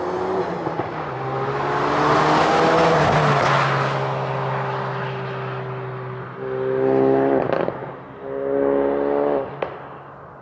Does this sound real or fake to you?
real